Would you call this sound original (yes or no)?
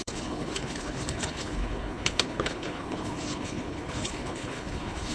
no